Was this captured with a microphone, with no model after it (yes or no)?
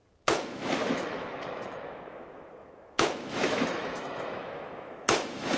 no